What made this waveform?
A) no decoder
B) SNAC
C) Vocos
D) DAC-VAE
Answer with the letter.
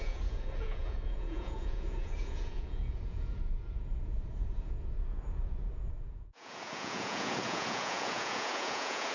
C